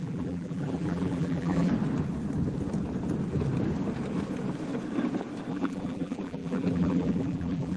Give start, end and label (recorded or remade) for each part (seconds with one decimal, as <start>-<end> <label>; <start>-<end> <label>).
0.0-1.7 remade; 1.7-5.5 recorded; 5.5-7.8 remade